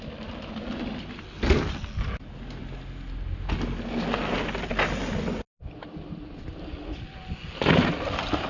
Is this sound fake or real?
real